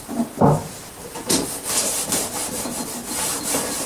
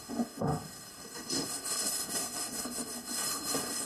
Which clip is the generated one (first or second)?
second